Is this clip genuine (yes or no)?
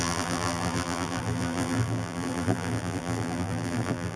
no